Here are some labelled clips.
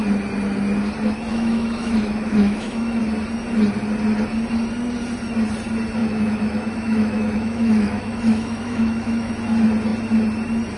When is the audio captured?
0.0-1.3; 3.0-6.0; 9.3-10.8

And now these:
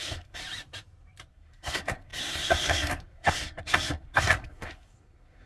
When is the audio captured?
0.4-1.3

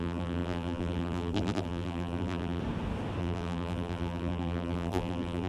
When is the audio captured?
2.6-3.2

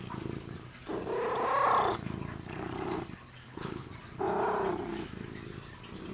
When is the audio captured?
0.0-3.4; 3.9-6.1